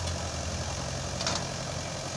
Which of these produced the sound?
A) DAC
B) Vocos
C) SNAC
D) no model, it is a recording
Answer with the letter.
D